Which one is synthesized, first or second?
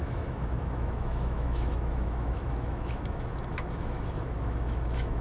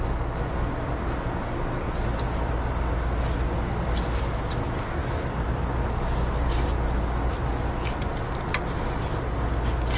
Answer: first